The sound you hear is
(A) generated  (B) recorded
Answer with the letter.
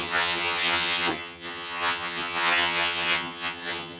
A